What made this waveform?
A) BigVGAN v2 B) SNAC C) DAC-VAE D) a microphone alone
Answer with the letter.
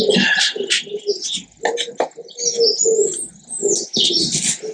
D